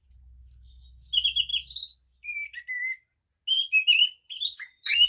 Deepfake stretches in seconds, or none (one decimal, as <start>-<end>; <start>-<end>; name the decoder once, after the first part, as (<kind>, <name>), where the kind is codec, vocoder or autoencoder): none